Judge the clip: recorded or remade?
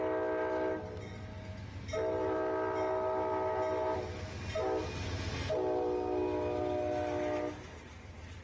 recorded